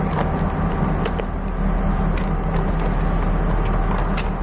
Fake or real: real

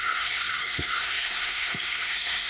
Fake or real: fake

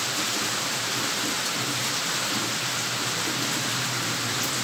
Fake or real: real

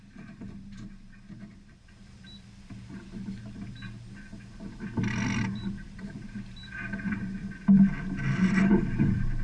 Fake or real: real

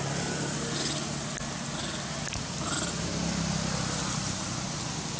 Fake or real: real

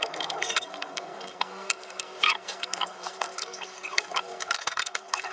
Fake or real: fake